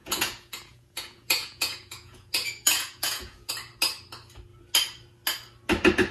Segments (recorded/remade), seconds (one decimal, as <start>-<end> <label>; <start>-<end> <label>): 0.0-3.5 remade; 3.5-6.1 recorded